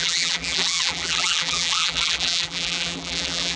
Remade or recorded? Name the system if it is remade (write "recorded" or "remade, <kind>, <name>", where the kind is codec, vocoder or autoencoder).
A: remade, vocoder, BigVGAN v2